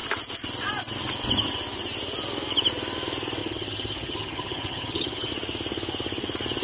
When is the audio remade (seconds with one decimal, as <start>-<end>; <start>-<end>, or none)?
3.4-5.3